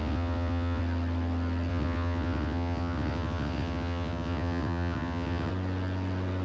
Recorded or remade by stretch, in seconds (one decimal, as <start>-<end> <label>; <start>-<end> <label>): 0.0-0.8 remade; 0.8-1.7 recorded; 1.7-5.5 remade; 5.5-6.4 recorded